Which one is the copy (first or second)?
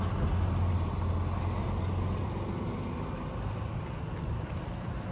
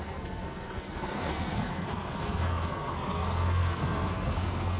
second